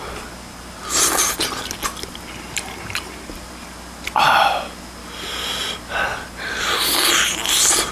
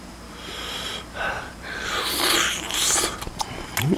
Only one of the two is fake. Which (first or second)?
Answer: second